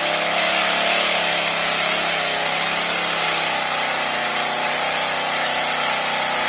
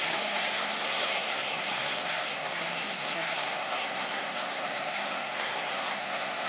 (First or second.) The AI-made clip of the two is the second